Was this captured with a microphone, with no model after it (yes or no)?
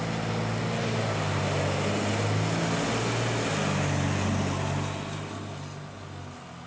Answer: yes